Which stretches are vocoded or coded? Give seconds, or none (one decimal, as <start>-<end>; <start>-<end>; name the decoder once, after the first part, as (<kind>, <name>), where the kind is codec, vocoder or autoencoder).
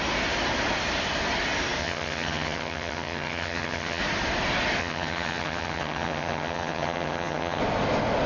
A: 1.8-4.0 (vocoder, HiFi-GAN); 4.8-7.6